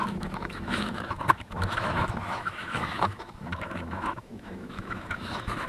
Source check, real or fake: fake